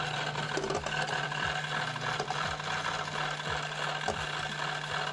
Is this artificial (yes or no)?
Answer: no